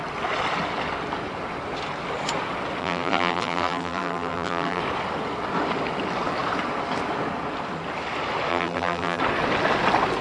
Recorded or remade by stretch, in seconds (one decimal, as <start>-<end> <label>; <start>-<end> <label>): 0.0-2.8 recorded; 2.8-4.8 remade; 4.8-8.5 recorded; 8.5-9.2 remade; 9.2-10.2 recorded